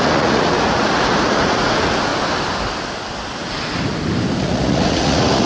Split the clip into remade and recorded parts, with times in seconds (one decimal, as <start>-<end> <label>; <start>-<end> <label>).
0.0-2.1 remade; 2.1-4.4 recorded; 4.4-5.5 remade